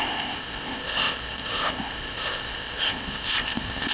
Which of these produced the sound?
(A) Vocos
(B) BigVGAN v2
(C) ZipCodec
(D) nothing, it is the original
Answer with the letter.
C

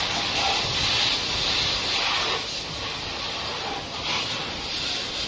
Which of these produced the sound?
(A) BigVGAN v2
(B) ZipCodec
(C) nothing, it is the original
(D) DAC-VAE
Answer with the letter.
C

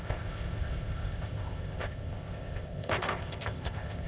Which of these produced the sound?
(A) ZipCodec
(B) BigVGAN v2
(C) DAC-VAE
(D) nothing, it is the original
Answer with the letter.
A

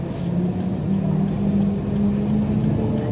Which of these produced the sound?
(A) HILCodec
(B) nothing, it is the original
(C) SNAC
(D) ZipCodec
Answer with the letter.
B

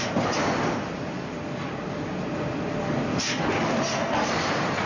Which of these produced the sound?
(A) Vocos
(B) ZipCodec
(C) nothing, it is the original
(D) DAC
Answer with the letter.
C